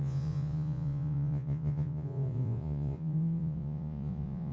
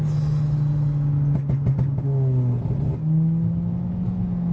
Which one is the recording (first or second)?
second